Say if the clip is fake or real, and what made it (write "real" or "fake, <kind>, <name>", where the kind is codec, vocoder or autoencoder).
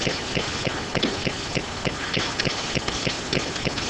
real